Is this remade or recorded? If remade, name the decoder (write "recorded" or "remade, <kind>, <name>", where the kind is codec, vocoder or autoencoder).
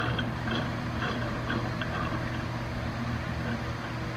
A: recorded